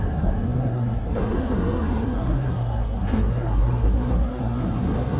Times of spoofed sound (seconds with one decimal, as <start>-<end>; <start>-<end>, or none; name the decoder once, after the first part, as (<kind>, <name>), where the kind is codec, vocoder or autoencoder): 0.0-5.2 (codec, SNAC)